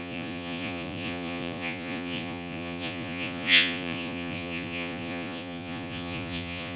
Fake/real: fake